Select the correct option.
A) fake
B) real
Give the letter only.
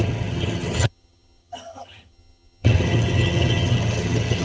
A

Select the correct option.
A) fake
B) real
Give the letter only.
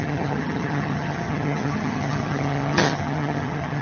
A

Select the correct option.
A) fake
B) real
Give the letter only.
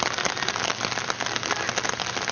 B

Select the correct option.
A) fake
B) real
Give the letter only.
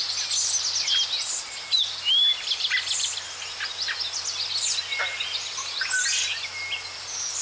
B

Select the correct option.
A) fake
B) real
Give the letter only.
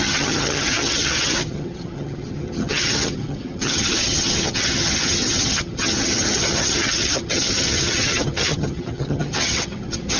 A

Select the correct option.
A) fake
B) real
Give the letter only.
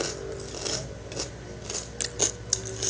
B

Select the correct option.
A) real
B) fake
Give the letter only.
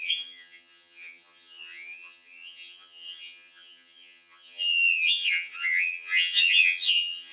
B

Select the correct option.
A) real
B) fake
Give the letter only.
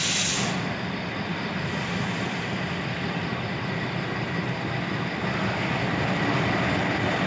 A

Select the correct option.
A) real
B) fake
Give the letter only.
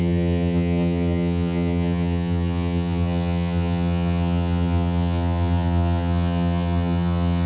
B